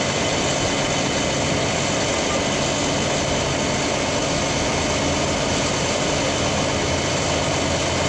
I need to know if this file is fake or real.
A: real